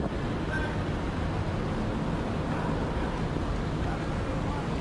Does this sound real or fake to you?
real